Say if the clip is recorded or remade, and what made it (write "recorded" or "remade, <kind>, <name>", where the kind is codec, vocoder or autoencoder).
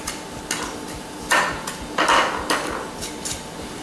recorded